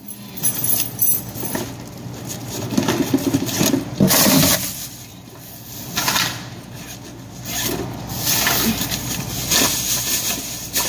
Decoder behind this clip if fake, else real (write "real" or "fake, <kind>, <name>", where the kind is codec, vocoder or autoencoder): real